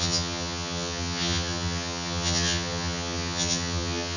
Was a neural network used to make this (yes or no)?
yes